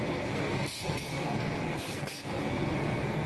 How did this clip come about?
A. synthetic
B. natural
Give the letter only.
A